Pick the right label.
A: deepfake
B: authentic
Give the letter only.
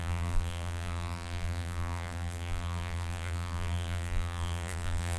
A